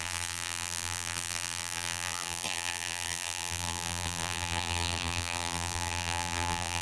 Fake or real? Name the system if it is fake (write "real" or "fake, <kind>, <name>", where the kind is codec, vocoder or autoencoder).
fake, vocoder, BigVGAN v2